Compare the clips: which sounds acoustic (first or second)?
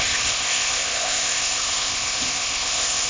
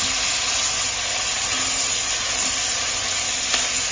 second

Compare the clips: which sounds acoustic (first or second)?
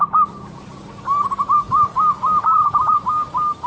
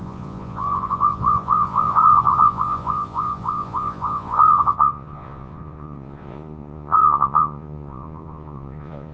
first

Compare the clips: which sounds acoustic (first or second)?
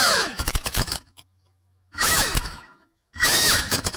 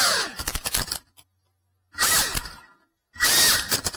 second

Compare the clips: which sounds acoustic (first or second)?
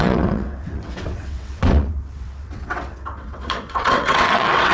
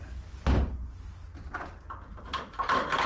second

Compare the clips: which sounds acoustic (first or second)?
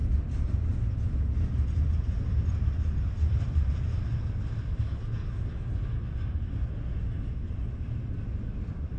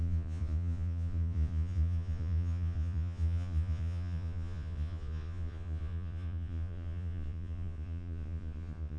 first